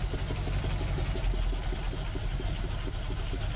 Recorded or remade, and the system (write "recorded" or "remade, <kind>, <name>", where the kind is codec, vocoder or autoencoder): recorded